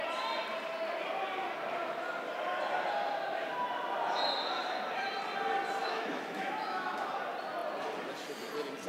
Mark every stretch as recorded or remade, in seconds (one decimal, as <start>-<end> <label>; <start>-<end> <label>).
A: 0.0-5.8 recorded; 5.8-7.1 remade; 7.1-8.9 recorded

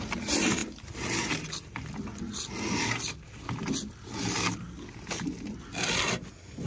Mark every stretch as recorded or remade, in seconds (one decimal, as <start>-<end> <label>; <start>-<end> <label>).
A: 0.0-6.7 recorded

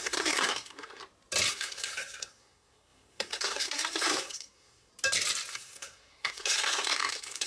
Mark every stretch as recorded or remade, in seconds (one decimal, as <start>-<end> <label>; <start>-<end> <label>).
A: 0.0-1.0 remade; 1.0-1.5 recorded; 1.5-4.9 remade; 4.9-5.5 recorded; 5.5-7.5 remade